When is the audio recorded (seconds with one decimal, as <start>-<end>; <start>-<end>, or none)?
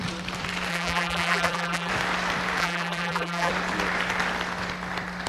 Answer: 0.0-0.7; 1.9-2.6; 3.5-5.3